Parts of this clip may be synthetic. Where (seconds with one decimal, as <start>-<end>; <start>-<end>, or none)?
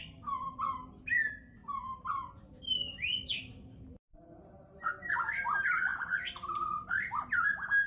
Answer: 4.1-5.1; 5.9-6.5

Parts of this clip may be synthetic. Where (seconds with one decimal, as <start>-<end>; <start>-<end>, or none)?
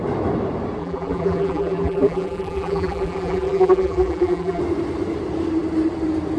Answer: 0.8-4.6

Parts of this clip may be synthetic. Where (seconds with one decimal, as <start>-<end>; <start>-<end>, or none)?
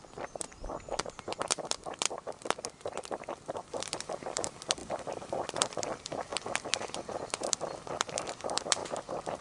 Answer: 0.0-6.3; 6.9-8.8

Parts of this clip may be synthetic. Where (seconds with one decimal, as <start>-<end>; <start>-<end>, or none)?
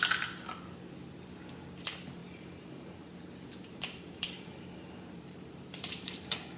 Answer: 2.2-6.6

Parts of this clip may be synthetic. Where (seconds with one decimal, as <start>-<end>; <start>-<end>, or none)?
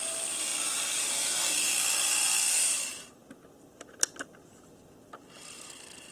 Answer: none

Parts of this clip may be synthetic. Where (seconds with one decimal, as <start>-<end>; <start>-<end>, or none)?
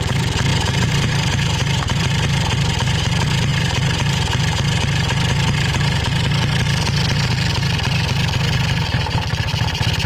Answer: 0.5-3.1; 3.5-6.0